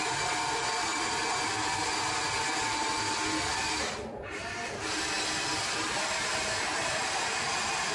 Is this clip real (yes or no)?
yes